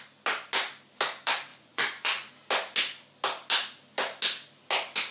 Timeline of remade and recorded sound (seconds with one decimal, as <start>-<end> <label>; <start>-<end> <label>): 0.0-1.5 recorded; 1.5-2.3 remade; 2.3-5.1 recorded